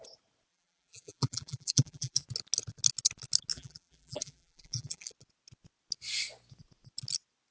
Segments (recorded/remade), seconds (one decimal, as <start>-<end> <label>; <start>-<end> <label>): 0.0-0.5 recorded; 0.5-2.2 remade; 2.2-3.5 recorded; 3.5-5.1 remade; 5.1-7.5 recorded